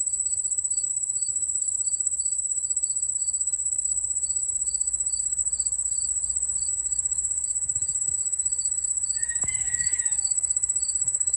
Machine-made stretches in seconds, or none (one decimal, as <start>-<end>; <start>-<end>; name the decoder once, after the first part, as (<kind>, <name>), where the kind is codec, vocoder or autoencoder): 0.0-5.4 (autoencoder, DAC-VAE); 6.7-11.4